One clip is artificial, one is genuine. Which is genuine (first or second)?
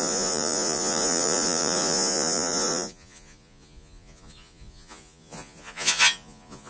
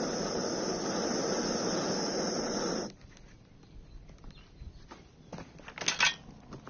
second